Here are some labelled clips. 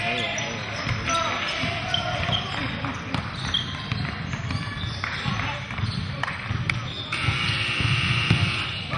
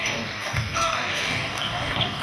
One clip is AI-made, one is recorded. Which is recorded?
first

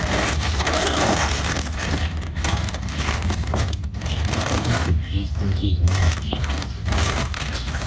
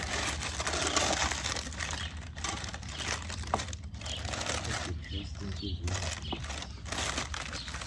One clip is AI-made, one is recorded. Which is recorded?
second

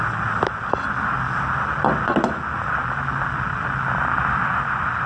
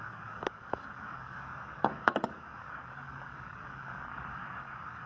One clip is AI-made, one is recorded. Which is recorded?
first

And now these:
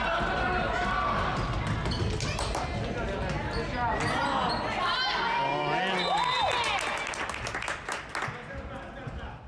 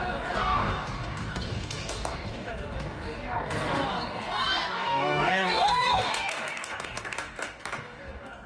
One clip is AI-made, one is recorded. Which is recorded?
first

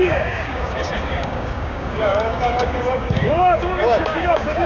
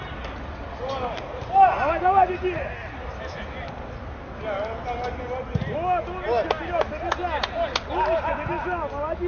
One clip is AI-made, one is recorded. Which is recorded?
second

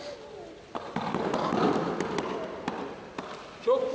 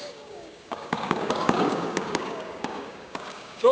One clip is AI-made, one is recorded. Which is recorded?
first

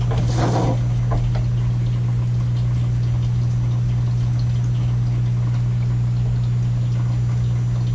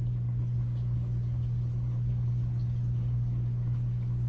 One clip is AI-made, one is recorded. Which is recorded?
first